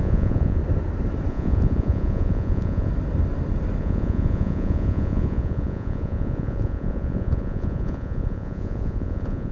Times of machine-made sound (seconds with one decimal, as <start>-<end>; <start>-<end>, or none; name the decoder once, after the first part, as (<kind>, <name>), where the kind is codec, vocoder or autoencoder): 0.0-0.6 (vocoder, Vocos); 1.3-2.9; 3.8-9.5

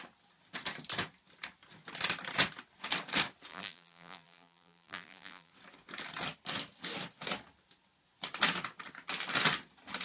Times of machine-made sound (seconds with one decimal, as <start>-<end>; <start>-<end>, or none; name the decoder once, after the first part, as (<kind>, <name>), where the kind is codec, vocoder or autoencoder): 3.5-5.5 (vocoder, BigVGAN v2)

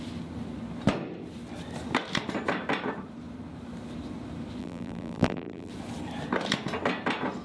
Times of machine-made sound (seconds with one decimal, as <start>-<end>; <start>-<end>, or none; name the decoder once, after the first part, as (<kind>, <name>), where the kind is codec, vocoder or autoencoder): 4.6-5.7 (vocoder, BigVGAN v2)

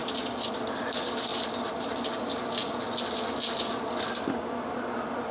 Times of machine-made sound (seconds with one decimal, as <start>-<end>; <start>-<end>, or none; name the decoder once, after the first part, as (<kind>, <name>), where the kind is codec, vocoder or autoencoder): none

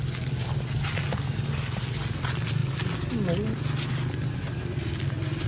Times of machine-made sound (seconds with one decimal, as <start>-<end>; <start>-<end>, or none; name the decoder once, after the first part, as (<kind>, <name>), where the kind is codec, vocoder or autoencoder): none

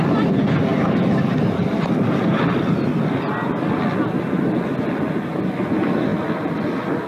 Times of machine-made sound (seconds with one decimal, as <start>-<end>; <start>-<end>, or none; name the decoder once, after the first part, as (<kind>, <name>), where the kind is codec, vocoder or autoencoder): none

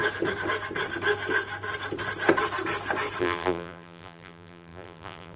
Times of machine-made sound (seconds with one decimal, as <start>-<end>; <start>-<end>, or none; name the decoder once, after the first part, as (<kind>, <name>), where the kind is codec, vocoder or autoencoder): 3.2-5.4 (vocoder, BigVGAN v2)

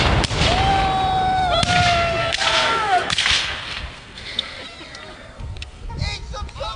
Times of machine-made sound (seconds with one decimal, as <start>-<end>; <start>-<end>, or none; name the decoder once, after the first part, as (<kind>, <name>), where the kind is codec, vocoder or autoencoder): 2.2-4.6 (codec, SNAC); 5.1-5.9